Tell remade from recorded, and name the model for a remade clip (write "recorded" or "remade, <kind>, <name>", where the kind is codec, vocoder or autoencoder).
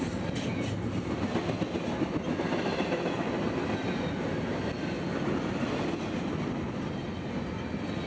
recorded